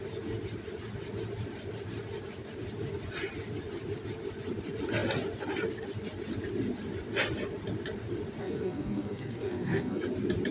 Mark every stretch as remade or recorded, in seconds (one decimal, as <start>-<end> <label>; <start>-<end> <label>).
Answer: 0.0-8.4 recorded; 8.4-10.0 remade; 10.0-10.5 recorded